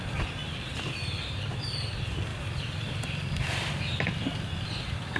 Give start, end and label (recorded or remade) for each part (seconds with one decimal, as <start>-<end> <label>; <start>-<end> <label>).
0.0-0.4 recorded; 0.4-1.4 remade; 1.4-2.3 recorded; 2.3-3.7 remade; 3.7-5.2 recorded